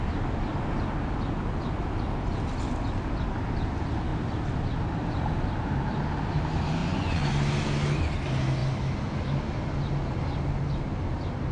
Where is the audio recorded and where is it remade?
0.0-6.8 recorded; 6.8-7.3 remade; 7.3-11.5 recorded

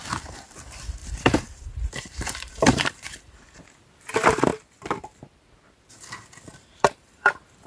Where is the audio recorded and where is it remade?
0.0-1.0 recorded; 1.0-3.6 remade; 3.6-6.5 recorded; 6.5-7.3 remade; 7.3-7.7 recorded

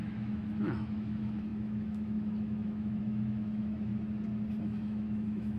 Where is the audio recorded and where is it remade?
0.0-3.9 remade; 3.9-4.6 recorded; 4.6-5.6 remade

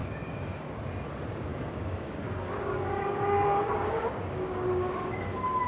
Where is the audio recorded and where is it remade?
0.0-0.8 remade; 0.8-1.5 recorded; 1.5-4.9 remade; 4.9-5.7 recorded